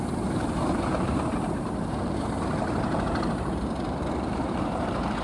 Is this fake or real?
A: fake